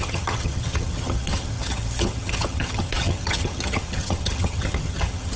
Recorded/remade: remade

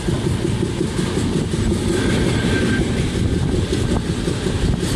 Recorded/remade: recorded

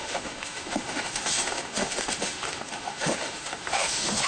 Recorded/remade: remade